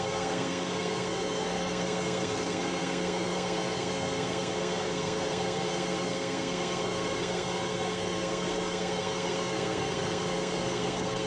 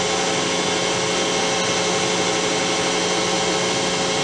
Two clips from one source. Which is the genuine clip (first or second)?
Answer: second